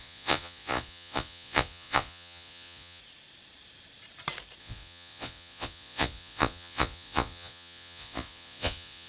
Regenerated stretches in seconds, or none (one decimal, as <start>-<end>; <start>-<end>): 0.0-3.0; 4.6-9.1